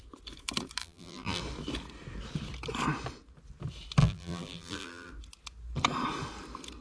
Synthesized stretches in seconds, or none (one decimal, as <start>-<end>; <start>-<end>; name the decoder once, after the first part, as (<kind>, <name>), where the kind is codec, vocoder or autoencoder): 0.8-1.4 (vocoder, BigVGAN v2); 4.0-5.1